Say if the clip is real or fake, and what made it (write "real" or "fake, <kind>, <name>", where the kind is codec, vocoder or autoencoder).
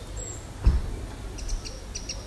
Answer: real